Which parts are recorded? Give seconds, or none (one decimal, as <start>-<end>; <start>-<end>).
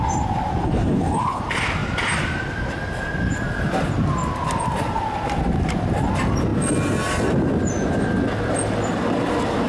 0.0-0.6; 1.4-9.7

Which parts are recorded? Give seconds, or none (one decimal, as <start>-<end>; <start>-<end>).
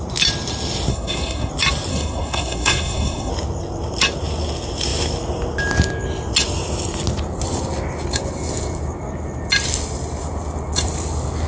0.0-0.9; 1.5-1.9; 3.3-11.5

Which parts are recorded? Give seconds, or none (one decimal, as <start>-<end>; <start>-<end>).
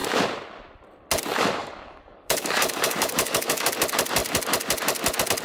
0.0-1.6; 3.7-5.4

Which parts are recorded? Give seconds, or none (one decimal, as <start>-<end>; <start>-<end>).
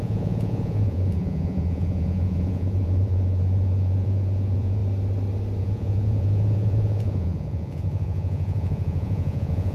4.8-5.6